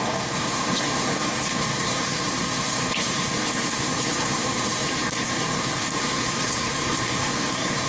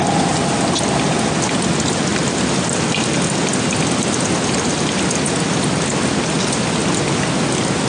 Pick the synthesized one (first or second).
first